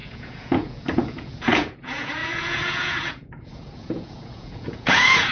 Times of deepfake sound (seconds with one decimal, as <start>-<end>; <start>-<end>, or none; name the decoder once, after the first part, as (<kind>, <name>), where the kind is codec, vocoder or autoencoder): 0.0-5.3 (vocoder, Vocos)